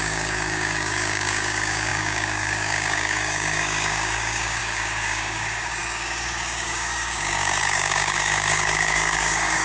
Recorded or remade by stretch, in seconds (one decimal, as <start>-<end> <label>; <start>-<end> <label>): 0.0-9.6 remade